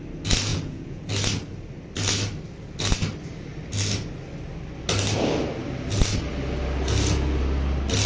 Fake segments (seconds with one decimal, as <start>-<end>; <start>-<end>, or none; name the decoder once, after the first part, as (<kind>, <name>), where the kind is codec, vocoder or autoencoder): 0.5-1.0 (vocoder, Vocos)